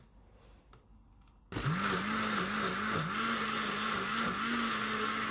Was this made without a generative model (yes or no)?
yes